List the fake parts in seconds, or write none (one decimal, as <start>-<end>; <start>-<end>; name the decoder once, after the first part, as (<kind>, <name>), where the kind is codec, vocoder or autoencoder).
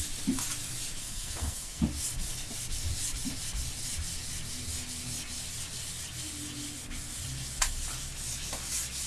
1.0-1.8 (codec, SNAC)